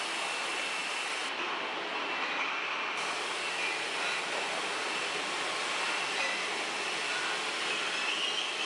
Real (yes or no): yes